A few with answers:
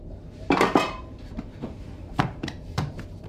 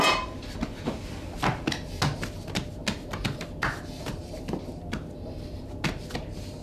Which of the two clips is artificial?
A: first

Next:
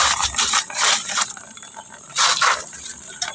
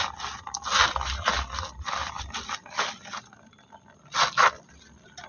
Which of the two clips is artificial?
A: first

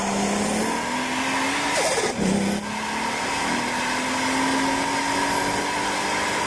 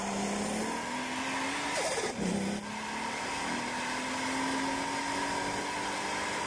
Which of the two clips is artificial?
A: second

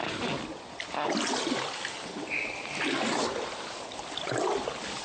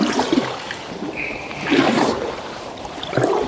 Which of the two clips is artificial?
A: second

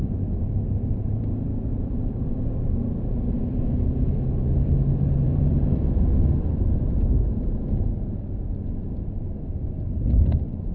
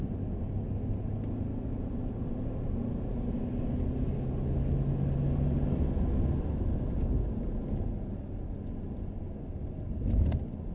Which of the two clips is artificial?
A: first